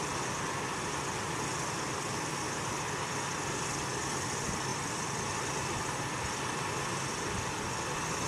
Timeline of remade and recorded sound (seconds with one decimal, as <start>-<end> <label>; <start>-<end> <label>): 0.0-8.3 recorded